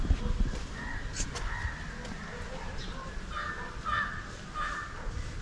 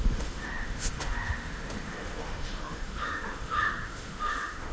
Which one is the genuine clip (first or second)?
first